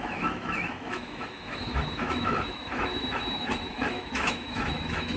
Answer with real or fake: fake